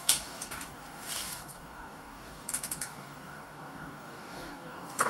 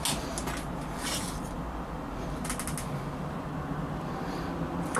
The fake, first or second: first